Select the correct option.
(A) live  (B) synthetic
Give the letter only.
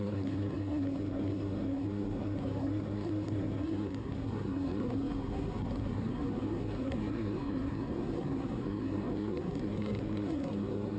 B